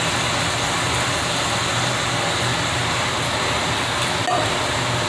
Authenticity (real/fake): real